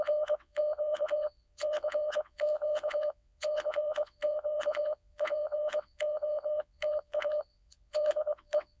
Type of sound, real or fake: fake